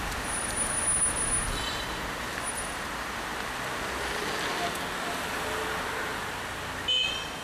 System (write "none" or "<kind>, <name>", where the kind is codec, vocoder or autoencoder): none